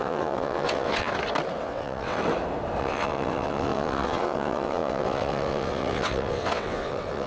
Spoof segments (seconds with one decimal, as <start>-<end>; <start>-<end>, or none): 0.0-1.1; 1.6-2.2; 2.8-7.3